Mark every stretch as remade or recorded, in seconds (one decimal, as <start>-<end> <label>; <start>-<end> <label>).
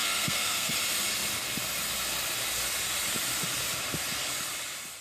0.0-0.7 remade; 0.7-5.0 recorded